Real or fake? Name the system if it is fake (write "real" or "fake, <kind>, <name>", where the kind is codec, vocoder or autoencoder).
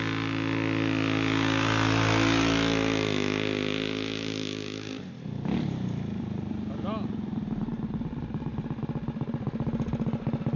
real